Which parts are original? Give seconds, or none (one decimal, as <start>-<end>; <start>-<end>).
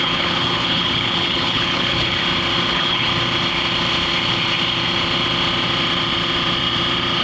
2.2-2.7; 3.1-7.2